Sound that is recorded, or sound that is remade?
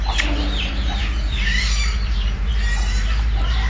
remade